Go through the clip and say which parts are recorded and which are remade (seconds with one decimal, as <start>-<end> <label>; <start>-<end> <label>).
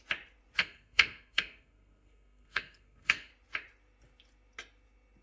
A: 0.0-0.6 recorded; 0.6-3.3 remade; 3.3-5.2 recorded